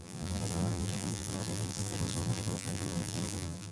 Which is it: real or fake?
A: fake